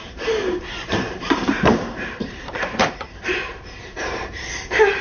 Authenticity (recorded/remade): remade